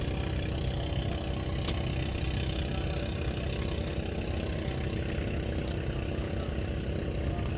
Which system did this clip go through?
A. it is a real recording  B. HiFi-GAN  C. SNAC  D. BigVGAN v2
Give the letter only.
A